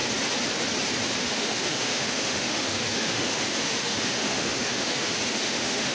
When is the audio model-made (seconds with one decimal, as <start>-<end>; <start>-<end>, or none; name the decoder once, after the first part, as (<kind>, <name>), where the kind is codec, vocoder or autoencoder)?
1.2-5.9 (autoencoder, DAC-VAE)